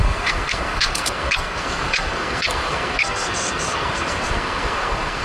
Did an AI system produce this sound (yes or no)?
yes